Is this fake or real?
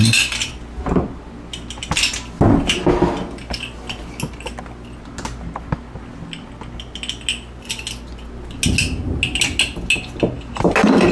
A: real